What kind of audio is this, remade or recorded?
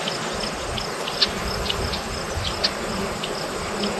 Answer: recorded